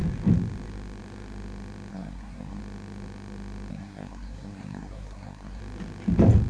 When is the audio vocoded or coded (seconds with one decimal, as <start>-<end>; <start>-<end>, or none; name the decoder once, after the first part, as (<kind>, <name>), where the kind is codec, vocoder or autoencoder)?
1.9-2.6 (codec, SNAC); 3.7-5.6